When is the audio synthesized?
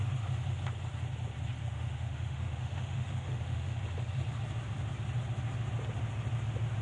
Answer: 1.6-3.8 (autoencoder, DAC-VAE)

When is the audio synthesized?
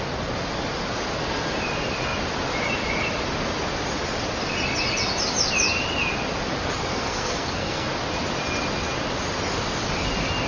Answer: 6.9-7.9 (codec, SNAC)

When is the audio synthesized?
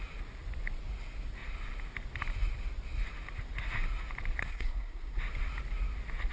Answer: 4.4-5.2 (codec, SNAC)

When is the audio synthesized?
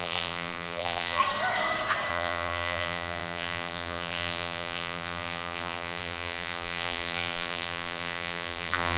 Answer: 0.0-1.2 (vocoder, BigVGAN v2); 2.1-9.0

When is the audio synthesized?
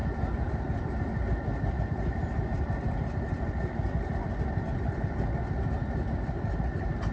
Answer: none